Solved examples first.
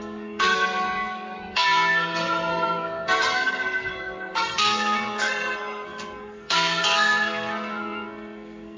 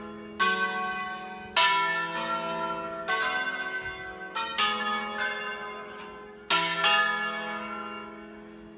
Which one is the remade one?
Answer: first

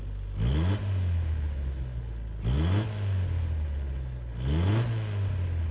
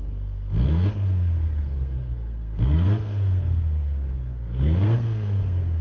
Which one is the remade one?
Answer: second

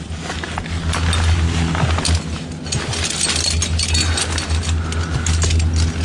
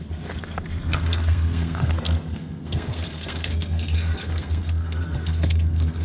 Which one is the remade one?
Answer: second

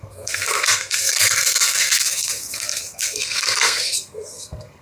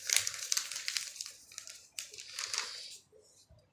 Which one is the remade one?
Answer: first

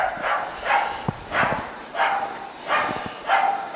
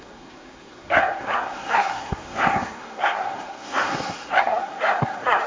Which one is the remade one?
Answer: second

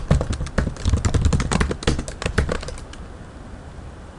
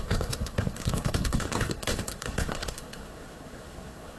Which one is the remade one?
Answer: second